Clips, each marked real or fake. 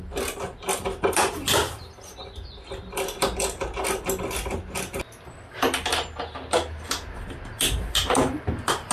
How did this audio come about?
real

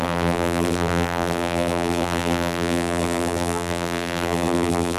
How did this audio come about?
fake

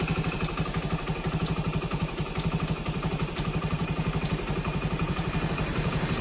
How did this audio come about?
fake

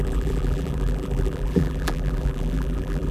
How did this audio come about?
fake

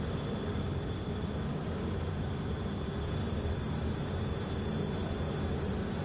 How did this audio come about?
fake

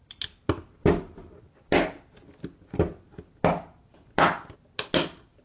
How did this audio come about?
real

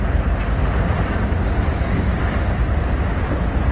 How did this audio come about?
real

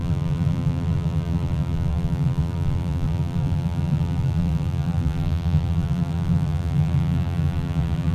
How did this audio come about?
fake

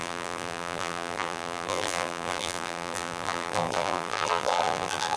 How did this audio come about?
fake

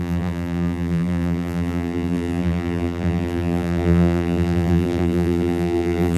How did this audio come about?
fake